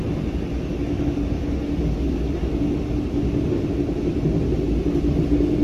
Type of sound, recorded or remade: recorded